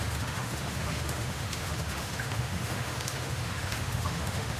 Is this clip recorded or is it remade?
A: remade